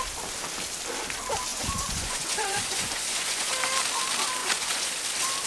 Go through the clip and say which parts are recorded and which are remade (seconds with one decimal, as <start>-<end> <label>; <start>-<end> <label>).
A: 0.0-1.5 recorded; 1.5-3.5 remade; 3.5-4.4 recorded; 4.4-4.9 remade; 4.9-5.5 recorded